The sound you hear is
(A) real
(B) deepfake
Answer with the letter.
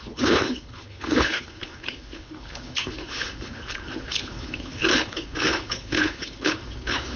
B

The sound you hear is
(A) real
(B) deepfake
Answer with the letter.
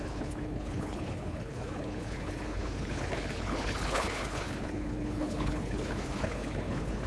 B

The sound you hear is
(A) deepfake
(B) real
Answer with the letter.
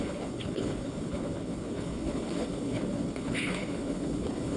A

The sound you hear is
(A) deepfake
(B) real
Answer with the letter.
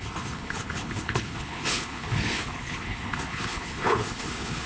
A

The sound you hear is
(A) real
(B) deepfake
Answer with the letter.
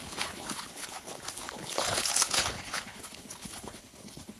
B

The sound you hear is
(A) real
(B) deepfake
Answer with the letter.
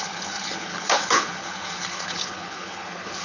B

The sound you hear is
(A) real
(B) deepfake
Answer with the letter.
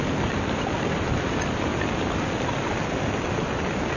A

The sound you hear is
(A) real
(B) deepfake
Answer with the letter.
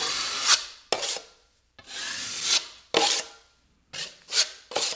A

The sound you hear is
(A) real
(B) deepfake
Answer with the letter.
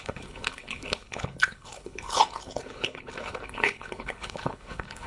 B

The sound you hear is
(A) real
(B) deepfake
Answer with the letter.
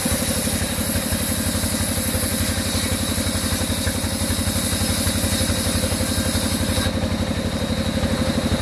A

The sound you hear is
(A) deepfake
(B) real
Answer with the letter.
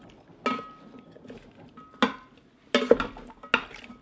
B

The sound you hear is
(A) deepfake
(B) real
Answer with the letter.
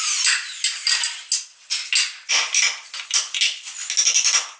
B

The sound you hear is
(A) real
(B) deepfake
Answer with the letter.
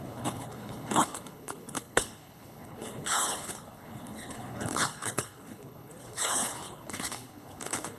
B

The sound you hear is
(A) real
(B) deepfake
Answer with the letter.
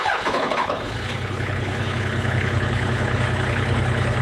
B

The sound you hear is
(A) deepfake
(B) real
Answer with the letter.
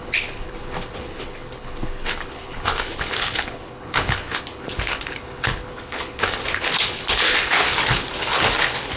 A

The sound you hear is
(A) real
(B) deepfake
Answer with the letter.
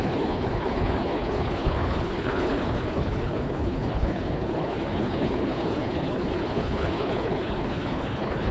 B